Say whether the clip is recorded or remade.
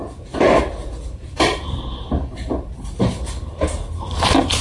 remade